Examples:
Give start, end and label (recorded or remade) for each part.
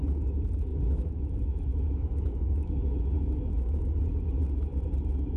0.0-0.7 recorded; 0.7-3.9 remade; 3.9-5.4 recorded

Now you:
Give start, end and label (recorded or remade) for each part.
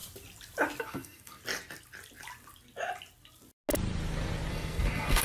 0.0-0.8 recorded; 0.8-1.4 remade; 1.4-4.5 recorded; 4.5-5.2 remade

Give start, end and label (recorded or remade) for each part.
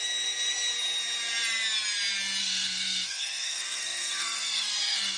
0.0-2.4 recorded; 2.4-5.2 remade